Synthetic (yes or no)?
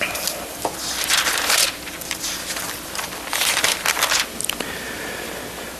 no